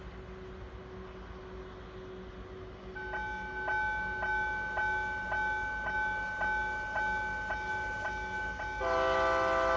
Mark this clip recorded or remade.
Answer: recorded